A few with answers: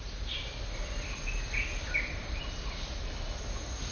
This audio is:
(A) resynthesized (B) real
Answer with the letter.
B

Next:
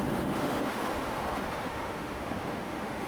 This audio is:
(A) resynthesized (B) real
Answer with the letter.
A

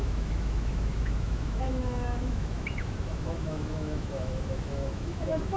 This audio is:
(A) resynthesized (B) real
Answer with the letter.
A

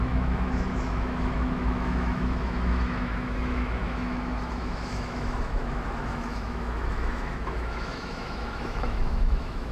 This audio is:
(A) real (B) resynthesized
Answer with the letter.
B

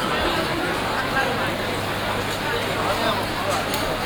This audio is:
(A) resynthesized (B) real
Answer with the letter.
B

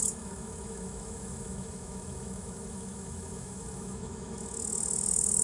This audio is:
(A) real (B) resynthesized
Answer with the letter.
B